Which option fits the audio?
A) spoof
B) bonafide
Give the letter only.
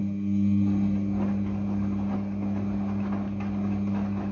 B